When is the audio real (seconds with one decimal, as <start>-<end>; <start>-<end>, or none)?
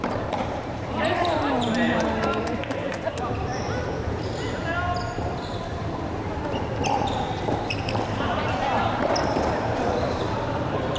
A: 3.5-7.7